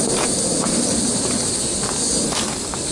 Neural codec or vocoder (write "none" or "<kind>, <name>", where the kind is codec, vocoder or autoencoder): none